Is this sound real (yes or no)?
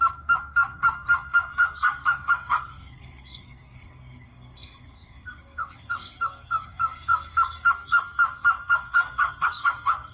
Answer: no